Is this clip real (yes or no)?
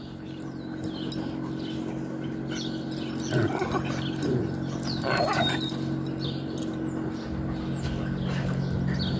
yes